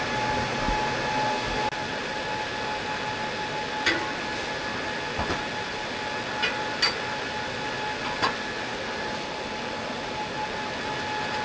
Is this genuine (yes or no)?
yes